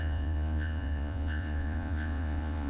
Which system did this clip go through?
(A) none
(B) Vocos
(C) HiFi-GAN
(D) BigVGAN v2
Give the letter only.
B